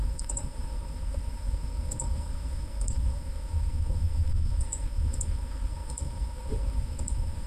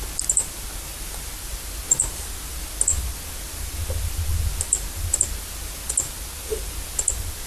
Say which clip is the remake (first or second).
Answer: first